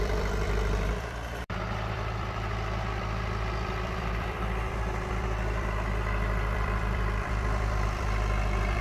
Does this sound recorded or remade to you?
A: remade